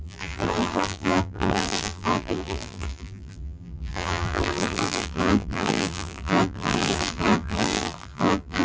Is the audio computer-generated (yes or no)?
yes